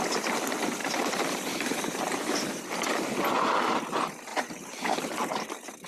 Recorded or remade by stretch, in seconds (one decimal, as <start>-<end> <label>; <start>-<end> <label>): 0.0-0.8 recorded; 0.8-2.6 remade; 2.6-4.3 recorded; 4.3-5.4 remade; 5.4-5.9 recorded